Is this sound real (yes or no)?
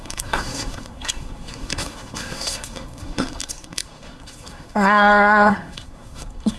no